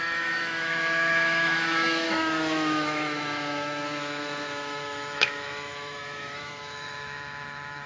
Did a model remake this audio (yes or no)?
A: yes